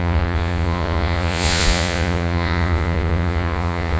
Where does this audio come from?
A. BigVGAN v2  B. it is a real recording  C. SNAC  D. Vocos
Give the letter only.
D